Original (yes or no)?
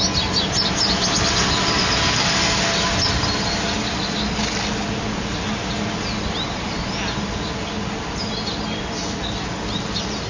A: yes